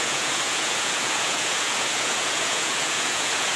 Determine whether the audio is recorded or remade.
remade